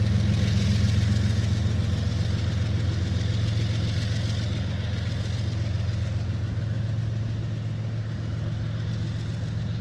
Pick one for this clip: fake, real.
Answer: real